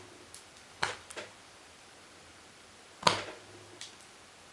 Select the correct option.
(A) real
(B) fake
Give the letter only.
B